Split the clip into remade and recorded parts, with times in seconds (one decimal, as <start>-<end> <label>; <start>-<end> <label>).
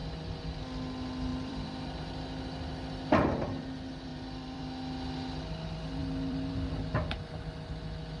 0.0-1.3 recorded; 1.3-2.0 remade; 2.0-4.1 recorded; 4.1-4.6 remade; 4.6-6.0 recorded; 6.0-6.9 remade; 6.9-8.2 recorded